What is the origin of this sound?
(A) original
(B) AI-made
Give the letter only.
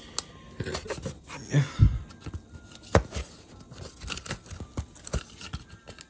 A